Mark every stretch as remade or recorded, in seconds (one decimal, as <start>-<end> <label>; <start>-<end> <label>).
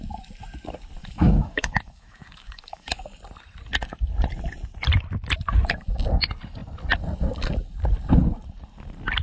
0.0-1.0 recorded; 1.0-3.0 remade; 3.0-9.2 recorded